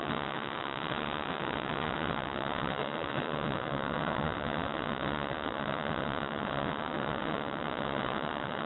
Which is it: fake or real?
fake